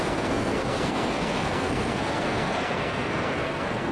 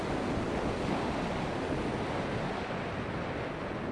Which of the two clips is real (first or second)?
second